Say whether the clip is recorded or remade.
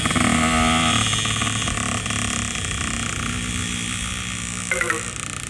recorded